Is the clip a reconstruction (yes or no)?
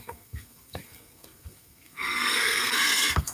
yes